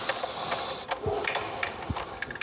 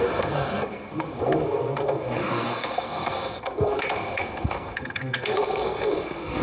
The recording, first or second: first